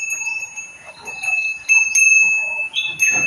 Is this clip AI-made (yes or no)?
no